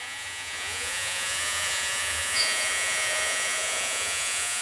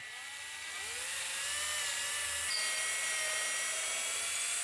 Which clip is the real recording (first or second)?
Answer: second